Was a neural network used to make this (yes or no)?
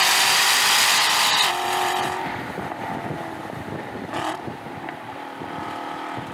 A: yes